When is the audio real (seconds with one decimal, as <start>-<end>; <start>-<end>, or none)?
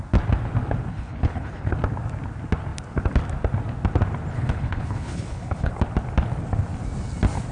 0.0-0.9; 1.7-4.3; 5.7-7.5